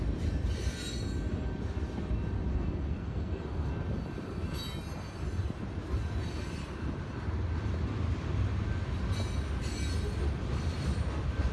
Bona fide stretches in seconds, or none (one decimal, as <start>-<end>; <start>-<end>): 0.0-2.5; 3.7-11.5